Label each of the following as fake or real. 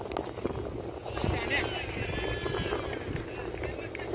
real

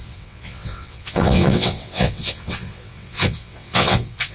fake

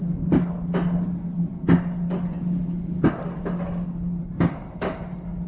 real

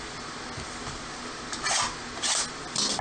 real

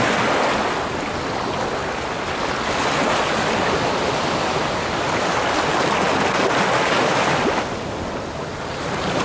real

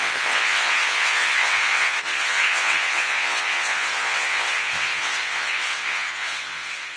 fake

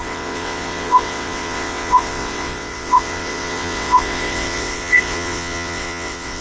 fake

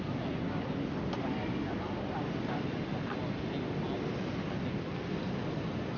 real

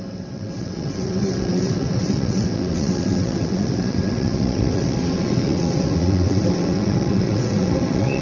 fake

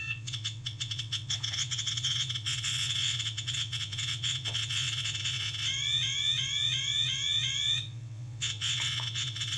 fake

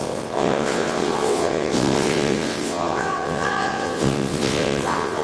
fake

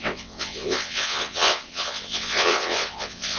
fake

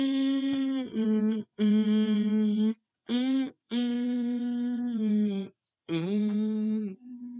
fake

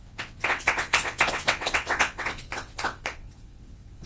fake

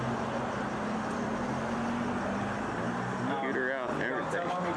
real